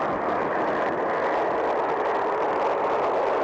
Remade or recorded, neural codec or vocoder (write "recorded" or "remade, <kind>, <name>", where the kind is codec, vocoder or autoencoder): recorded